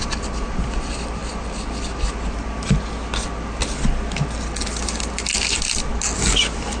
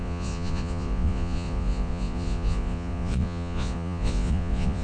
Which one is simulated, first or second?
second